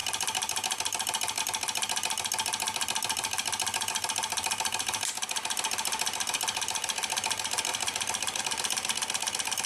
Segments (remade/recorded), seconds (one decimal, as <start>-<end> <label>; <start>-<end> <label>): 0.0-7.7 recorded; 7.7-8.4 remade; 8.4-9.7 recorded